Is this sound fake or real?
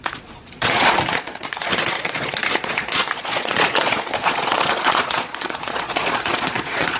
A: fake